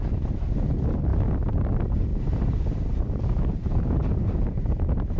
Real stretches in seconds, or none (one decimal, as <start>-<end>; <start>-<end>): 0.0-2.1

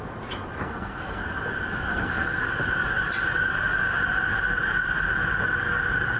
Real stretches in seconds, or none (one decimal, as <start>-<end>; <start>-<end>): 0.0-0.6; 1.2-1.9; 2.5-6.2

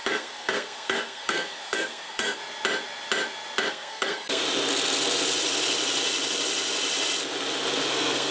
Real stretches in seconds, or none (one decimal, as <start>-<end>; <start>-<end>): 2.4-3.7; 4.4-7.9